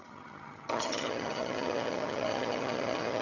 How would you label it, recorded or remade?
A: remade